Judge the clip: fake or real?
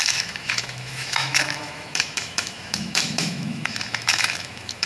fake